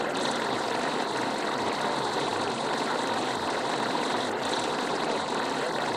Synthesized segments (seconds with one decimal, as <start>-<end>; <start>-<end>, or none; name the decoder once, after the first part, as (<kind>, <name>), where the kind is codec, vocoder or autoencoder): none